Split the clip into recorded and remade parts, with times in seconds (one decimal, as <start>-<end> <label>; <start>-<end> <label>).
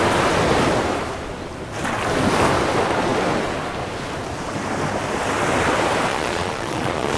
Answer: 0.0-6.1 recorded; 6.1-7.2 remade